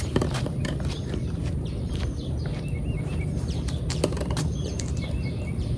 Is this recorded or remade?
remade